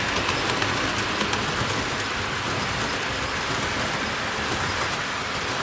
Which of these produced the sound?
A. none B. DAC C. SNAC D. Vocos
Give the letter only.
A